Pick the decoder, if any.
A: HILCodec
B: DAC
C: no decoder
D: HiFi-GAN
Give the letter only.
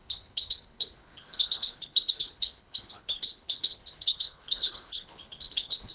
A